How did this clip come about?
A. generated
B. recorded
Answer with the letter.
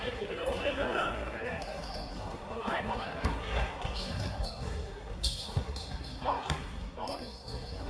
A